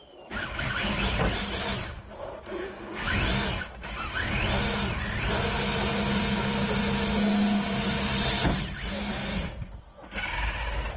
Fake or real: real